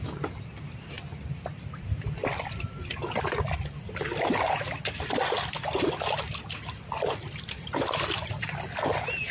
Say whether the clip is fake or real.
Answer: real